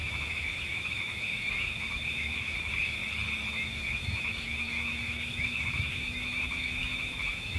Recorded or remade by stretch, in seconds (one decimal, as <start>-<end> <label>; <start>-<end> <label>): 0.0-3.0 remade; 3.0-3.5 recorded; 3.5-7.6 remade